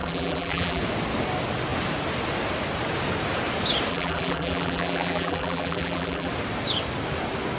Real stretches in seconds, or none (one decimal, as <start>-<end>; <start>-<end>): 0.8-3.9; 6.3-7.6